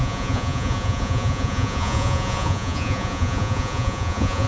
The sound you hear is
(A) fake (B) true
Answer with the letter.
A